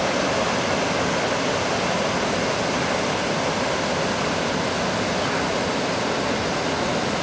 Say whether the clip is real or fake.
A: real